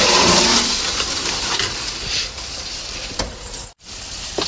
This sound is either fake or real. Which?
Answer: real